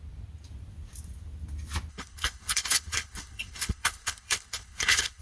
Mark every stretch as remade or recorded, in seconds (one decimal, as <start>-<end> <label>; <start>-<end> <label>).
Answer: 0.0-1.9 recorded; 1.9-5.2 remade